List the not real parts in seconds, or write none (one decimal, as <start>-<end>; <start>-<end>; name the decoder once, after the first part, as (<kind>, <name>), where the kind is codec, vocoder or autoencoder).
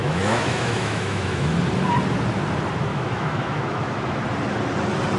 0.0-1.5 (autoencoder, DAC-VAE); 2.9-4.2